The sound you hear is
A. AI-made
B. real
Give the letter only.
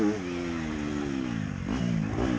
B